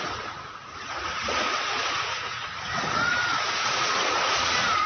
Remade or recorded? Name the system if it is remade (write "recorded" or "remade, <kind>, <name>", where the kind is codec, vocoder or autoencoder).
remade, vocoder, Vocos